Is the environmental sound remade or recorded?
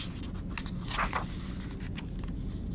recorded